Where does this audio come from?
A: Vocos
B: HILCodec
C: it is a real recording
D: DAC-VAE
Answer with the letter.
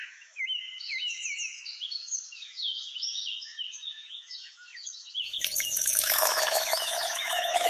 D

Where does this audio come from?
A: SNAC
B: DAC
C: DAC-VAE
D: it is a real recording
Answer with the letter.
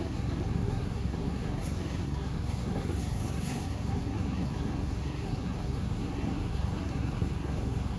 A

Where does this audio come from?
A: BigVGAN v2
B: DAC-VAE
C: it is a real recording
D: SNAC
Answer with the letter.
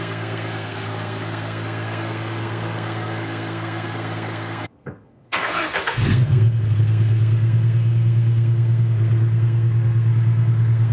D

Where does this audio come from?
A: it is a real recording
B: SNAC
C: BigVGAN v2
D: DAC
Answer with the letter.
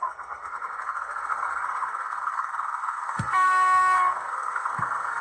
B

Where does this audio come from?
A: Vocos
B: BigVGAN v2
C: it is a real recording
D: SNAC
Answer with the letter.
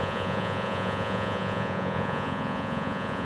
A